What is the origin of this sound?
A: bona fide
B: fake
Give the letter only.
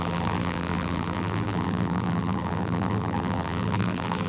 B